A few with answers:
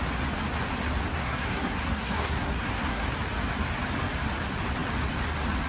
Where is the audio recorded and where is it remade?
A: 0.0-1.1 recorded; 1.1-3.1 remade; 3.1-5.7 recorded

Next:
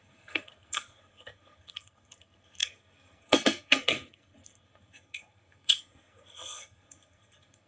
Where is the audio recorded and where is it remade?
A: 0.0-7.7 remade

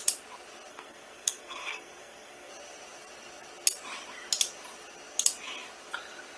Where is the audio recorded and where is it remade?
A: 0.0-0.7 recorded; 0.7-2.5 remade; 2.5-6.4 recorded

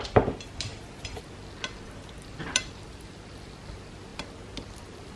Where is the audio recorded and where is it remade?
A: 0.0-5.2 recorded

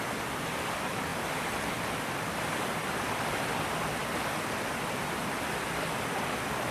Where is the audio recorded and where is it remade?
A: 0.0-6.7 recorded

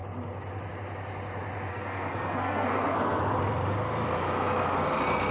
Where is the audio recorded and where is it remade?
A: 0.0-1.7 recorded; 1.7-3.2 remade; 3.2-5.3 recorded